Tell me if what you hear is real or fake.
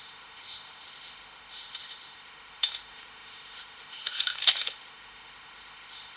fake